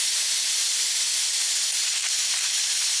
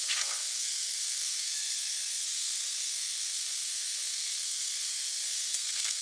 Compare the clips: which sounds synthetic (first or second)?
second